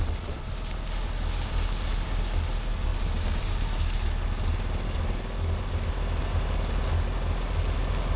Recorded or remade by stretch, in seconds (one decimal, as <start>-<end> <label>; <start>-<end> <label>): 0.0-8.2 recorded